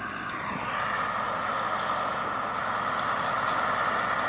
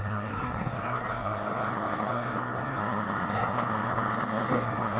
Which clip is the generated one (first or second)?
second